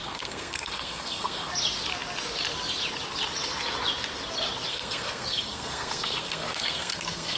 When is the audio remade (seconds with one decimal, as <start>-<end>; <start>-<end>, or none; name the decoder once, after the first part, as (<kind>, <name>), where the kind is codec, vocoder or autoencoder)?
0.0-1.5 (codec, SNAC); 4.7-7.4